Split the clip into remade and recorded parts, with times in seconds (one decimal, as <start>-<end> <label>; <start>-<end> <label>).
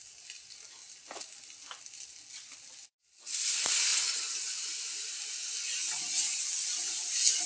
0.0-7.5 recorded